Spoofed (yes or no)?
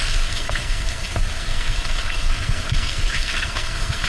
yes